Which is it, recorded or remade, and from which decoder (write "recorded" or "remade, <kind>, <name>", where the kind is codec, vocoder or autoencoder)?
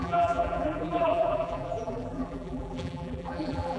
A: remade, vocoder, BigVGAN v2